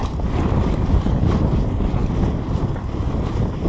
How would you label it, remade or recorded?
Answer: recorded